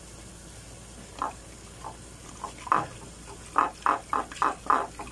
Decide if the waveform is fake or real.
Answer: real